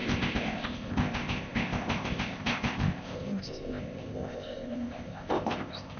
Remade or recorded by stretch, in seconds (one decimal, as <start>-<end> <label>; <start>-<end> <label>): 0.0-6.0 remade